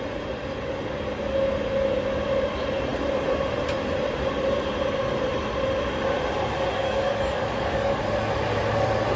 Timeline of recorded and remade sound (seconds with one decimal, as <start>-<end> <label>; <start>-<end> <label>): 0.0-6.8 recorded; 6.8-8.0 remade; 8.0-9.2 recorded